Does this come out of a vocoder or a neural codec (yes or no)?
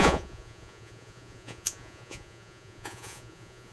yes